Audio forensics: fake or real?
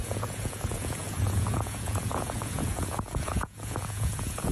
fake